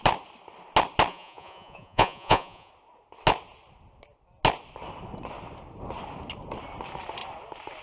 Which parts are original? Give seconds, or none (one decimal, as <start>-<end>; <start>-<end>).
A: 0.0-1.1; 2.7-7.8